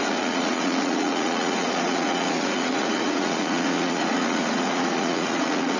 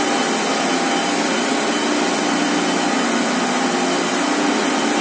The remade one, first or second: first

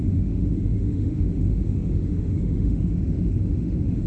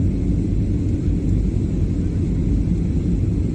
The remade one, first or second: first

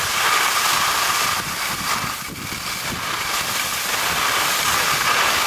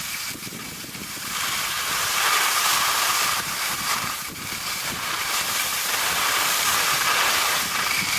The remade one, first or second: second